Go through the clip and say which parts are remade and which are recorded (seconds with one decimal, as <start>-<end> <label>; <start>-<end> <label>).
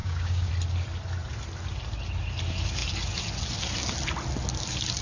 0.0-0.5 remade; 0.5-5.0 recorded